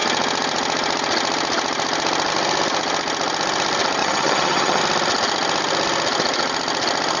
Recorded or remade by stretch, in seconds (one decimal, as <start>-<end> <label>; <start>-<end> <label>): 0.0-4.0 recorded; 4.0-4.8 remade; 4.8-7.2 recorded